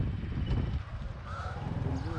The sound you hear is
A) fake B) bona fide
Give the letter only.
B